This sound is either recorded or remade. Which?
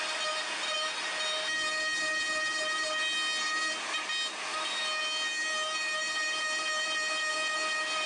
recorded